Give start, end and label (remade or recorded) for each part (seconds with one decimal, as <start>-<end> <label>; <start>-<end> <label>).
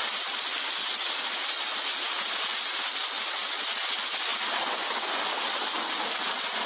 0.0-6.7 recorded